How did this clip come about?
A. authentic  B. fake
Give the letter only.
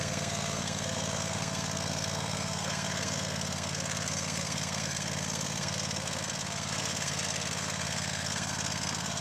B